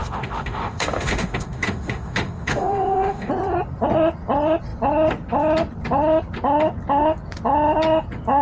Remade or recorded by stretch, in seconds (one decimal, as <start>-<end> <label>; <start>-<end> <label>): 0.0-3.3 remade; 3.3-8.4 recorded

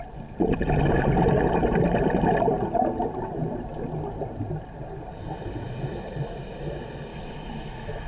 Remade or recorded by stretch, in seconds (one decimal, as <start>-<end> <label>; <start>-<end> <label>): 0.0-7.1 recorded; 7.1-8.1 remade

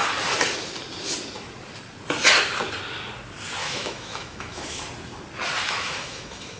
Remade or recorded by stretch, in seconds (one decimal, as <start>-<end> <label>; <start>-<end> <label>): 0.0-3.6 recorded; 3.6-4.8 remade; 4.8-5.6 recorded; 5.6-6.6 remade

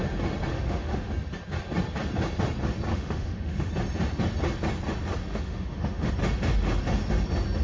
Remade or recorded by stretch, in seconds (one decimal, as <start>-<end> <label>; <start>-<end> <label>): 0.0-0.5 recorded; 0.5-1.1 remade; 1.1-2.9 recorded; 2.9-3.7 remade; 3.7-5.3 recorded; 5.3-6.1 remade; 6.1-7.6 recorded

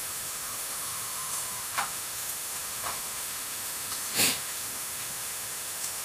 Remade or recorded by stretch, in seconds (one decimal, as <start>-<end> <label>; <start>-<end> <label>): 0.0-6.0 remade

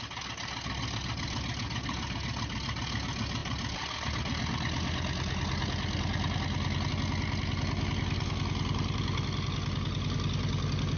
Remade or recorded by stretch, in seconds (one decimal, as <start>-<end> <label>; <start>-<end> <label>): 0.0-11.0 recorded

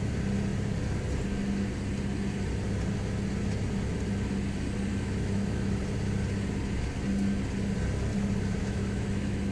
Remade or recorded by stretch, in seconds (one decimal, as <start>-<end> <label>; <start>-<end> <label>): 0.0-4.9 recorded; 4.9-5.8 remade; 5.8-8.6 recorded; 8.6-9.5 remade

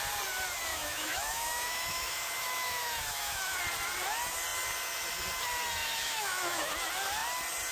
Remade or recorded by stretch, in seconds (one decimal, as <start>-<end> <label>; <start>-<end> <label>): 0.0-0.7 recorded; 0.7-3.6 remade; 3.6-5.8 recorded; 5.8-6.7 remade; 6.7-7.7 recorded